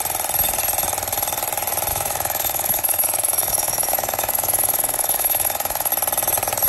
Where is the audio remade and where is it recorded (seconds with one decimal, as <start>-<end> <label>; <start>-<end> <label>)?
0.0-1.9 recorded; 1.9-5.9 remade; 5.9-6.7 recorded